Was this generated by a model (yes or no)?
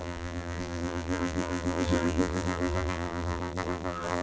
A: yes